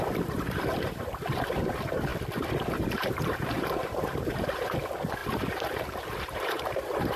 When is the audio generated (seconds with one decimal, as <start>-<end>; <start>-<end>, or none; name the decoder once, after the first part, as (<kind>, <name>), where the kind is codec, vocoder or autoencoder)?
0.0-2.1 (vocoder, BigVGAN v2); 2.7-7.2

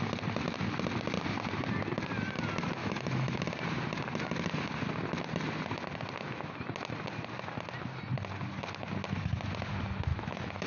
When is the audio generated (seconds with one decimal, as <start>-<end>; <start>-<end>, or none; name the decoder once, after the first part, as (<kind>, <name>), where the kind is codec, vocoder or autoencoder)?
2.8-3.4 (autoencoder, DAC-VAE); 10.1-10.7

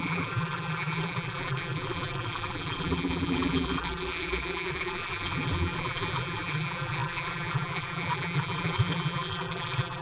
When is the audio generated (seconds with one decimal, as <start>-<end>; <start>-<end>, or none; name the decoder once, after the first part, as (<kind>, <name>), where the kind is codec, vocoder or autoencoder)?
0.0-10.0 (vocoder, BigVGAN v2)

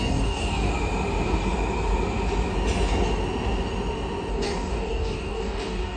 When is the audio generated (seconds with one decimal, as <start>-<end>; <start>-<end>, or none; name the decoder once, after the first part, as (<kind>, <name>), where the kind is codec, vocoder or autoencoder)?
0.0-0.7 (codec, DAC); 4.3-6.0

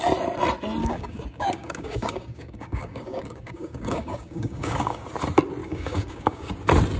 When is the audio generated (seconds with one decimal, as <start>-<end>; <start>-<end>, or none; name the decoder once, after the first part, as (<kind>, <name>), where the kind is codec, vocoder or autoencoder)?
0.8-5.0 (codec, DAC); 5.6-6.5